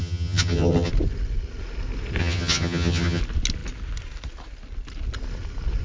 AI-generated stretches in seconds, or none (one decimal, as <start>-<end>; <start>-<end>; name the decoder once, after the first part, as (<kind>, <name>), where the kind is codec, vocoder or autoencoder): 0.0-0.9 (vocoder, HiFi-GAN); 2.2-3.2